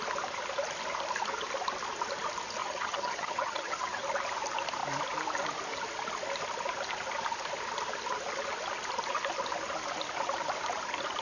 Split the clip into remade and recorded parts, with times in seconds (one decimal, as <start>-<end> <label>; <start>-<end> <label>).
0.0-2.6 recorded; 2.6-4.0 remade; 4.0-11.2 recorded